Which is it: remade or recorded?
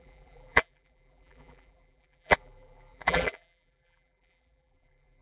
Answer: remade